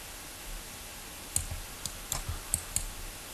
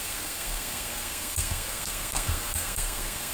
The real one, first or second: first